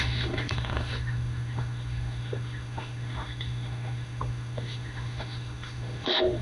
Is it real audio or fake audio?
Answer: fake